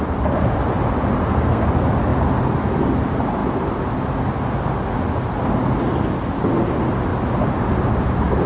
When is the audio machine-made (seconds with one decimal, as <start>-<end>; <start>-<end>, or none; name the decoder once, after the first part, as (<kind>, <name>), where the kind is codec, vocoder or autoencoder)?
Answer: 1.2-1.7 (codec, SNAC)